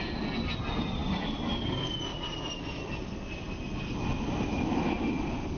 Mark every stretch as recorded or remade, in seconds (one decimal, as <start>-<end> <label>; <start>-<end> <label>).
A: 0.0-5.6 recorded